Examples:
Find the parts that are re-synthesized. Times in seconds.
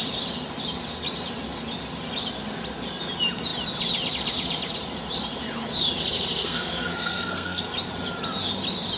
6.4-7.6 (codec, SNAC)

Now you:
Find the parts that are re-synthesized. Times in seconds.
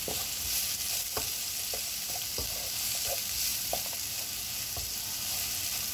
3.5-4.2 (vocoder, BigVGAN v2)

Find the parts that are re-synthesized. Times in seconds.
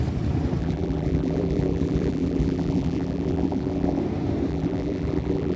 0.6-4.0 (vocoder, BigVGAN v2); 4.5-5.6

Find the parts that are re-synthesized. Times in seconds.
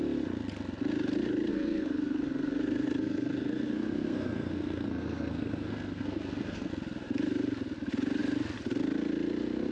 1.5-6.7 (codec, SNAC)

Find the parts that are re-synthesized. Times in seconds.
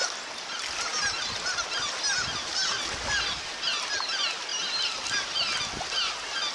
none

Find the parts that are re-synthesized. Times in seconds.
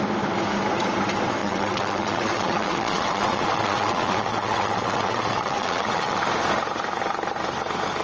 1.4-6.2 (vocoder, WaveNeXt)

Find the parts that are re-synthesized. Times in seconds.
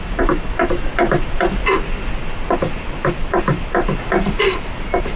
none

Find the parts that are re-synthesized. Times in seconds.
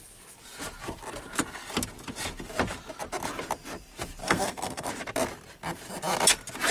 4.2-4.9 (codec, SNAC)